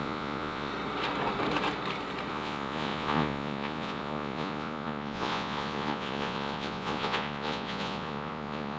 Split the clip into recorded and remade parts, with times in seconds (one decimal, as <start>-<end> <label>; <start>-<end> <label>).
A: 0.0-0.7 remade; 0.7-2.3 recorded; 2.3-8.8 remade